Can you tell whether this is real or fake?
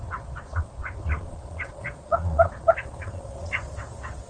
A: fake